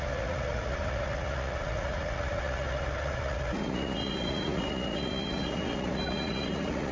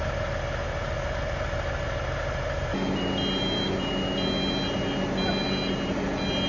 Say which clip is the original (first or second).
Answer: second